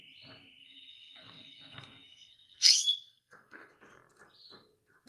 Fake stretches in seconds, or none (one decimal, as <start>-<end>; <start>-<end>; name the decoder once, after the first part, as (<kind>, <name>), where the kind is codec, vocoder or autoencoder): 0.6-3.7 (codec, SNAC)